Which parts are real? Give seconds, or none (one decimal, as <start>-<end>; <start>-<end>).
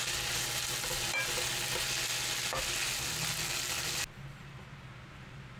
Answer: 0.0-5.6